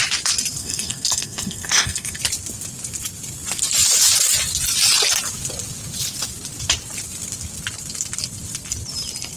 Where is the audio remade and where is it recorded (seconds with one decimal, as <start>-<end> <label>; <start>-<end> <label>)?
0.0-0.6 recorded; 0.6-2.2 remade; 2.2-9.4 recorded